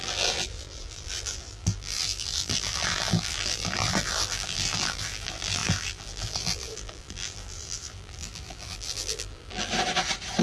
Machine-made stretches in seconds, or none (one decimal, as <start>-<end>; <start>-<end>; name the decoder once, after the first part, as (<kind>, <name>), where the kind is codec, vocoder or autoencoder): 0.0-9.7 (vocoder, BigVGAN v2)